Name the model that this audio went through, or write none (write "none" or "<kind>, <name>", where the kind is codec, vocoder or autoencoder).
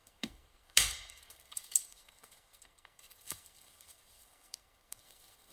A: codec, SNAC